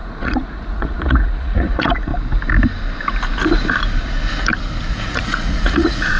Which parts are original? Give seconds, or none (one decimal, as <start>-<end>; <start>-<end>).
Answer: 2.1-4.9